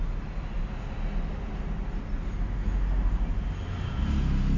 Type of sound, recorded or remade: recorded